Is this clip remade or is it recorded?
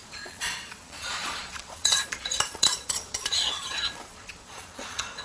remade